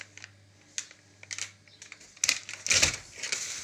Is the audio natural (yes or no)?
yes